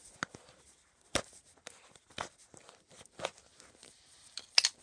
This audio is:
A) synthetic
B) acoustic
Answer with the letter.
B